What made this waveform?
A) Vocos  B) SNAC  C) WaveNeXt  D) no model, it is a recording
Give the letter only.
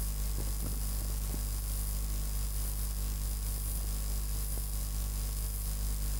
D